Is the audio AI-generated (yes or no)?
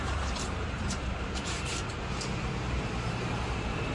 yes